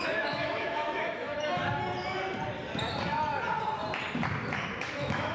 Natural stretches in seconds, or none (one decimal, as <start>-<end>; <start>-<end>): 1.6-4.8